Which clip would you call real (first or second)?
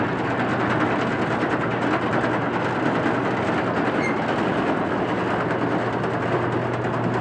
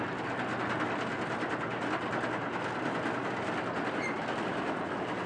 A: first